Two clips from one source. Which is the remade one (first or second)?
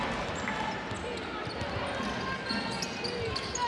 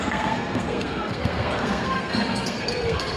second